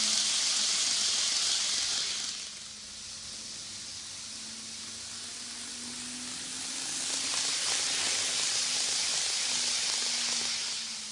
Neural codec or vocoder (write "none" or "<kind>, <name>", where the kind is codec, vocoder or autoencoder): none